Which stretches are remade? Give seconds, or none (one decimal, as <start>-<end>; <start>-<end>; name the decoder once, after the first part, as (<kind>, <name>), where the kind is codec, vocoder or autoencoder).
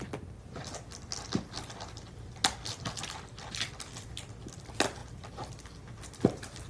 none